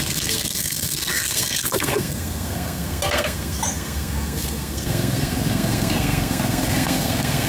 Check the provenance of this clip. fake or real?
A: fake